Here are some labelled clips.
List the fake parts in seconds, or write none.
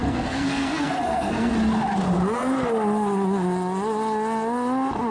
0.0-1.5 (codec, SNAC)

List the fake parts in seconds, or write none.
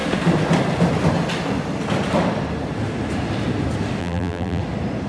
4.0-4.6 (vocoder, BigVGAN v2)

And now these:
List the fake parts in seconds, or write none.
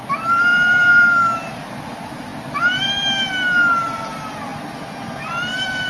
none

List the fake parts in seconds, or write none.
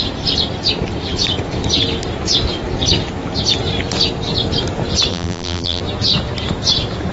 5.1-5.8 (vocoder, BigVGAN v2)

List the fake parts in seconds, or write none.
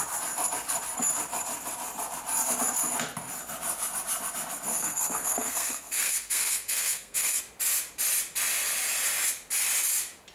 4.7-7.4 (codec, SNAC)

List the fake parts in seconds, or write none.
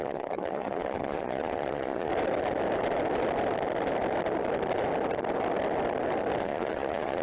0.0-2.1 (vocoder, Vocos); 6.4-7.2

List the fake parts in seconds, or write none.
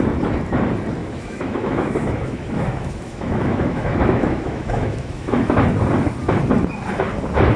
1.0-5.6 (autoencoder, DAC-VAE)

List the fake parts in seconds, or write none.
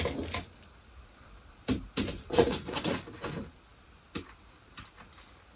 2.1-2.8 (vocoder, Vocos)